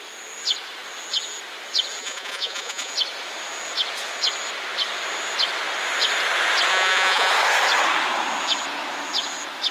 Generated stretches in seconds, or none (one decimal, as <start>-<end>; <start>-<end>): 2.0-2.9; 6.7-7.3